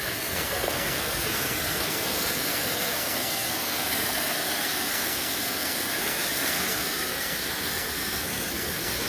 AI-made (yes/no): yes